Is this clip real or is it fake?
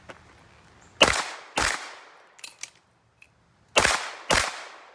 real